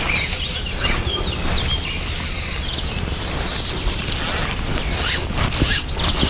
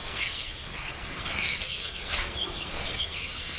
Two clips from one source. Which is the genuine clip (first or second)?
first